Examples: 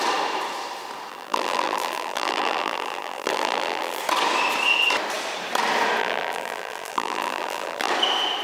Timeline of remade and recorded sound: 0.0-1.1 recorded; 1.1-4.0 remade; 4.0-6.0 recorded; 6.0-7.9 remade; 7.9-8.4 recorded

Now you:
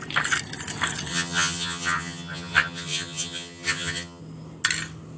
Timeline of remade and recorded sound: 0.0-1.1 recorded; 1.1-4.2 remade; 4.2-5.2 recorded

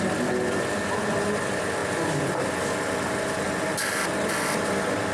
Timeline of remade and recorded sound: 0.0-5.1 recorded

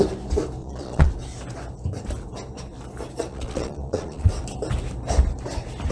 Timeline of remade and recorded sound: 0.0-0.6 recorded; 0.6-1.1 remade; 1.1-3.3 recorded; 3.3-4.3 remade; 4.3-5.9 recorded

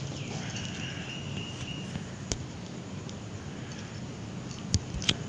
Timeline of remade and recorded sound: 0.0-5.3 recorded

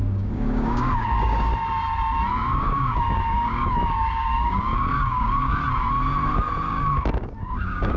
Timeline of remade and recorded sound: 0.0-1.5 remade; 1.5-2.3 recorded; 2.3-5.6 remade; 5.6-6.7 recorded; 6.7-8.0 remade